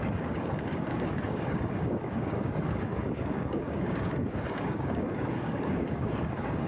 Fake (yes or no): yes